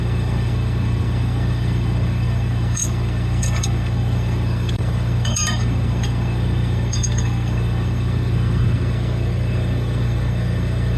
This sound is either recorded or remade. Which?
remade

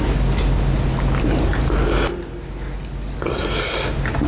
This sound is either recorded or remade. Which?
recorded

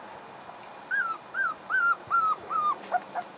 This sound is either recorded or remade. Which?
recorded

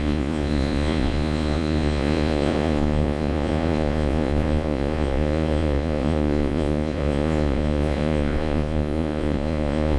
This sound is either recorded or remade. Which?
remade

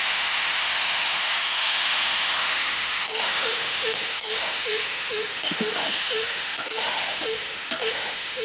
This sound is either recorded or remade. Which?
remade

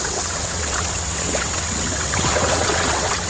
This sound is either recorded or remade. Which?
remade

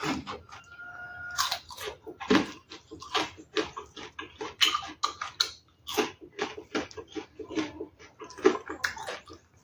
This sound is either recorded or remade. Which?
recorded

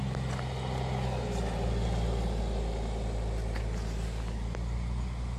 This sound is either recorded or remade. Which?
recorded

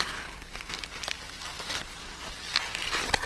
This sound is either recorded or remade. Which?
recorded